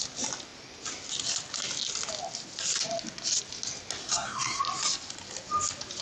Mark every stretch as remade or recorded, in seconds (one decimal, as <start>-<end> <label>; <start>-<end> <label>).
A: 0.0-4.0 recorded; 4.0-4.6 remade; 4.6-6.0 recorded